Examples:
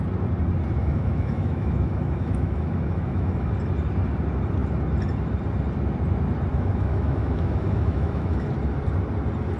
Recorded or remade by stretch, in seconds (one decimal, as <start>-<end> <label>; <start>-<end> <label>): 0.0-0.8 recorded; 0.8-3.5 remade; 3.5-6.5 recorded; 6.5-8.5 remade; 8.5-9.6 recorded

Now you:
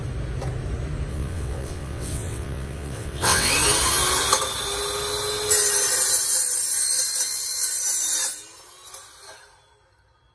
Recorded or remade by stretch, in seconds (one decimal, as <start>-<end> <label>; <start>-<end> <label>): 0.0-1.1 recorded; 1.1-3.5 remade; 3.5-10.3 recorded

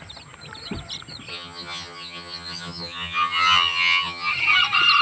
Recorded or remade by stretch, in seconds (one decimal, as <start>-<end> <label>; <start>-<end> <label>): 0.0-1.3 recorded; 1.3-4.3 remade; 4.3-5.0 recorded

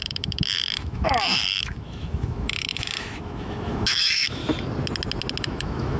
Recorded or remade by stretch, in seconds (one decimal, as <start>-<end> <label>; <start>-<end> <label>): 0.0-4.4 remade; 4.4-5.4 recorded; 5.4-6.0 remade